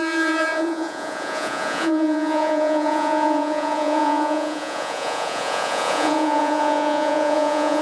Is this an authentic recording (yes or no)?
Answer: no